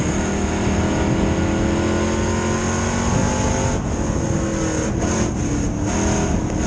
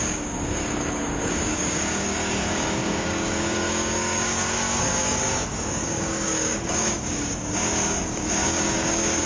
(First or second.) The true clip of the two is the first